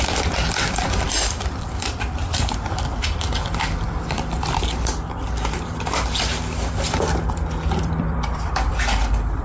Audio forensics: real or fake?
fake